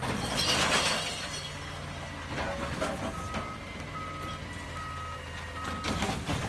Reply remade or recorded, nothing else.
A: recorded